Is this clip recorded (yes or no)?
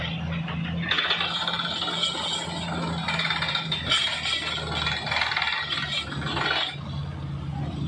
yes